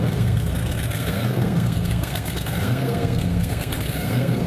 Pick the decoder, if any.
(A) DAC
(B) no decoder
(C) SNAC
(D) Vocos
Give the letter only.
C